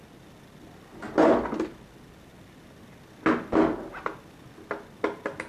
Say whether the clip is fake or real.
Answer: real